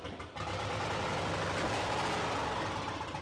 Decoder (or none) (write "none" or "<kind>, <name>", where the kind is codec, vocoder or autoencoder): none